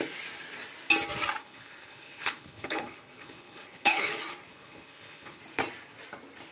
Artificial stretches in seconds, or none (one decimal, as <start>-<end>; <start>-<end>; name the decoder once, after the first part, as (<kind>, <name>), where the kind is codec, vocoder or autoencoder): 1.4-4.1 (codec, HILCodec); 4.5-5.4